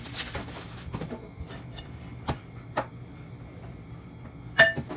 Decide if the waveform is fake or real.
real